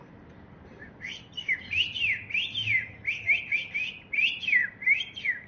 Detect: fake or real real